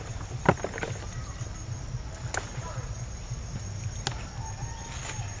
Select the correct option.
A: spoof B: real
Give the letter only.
B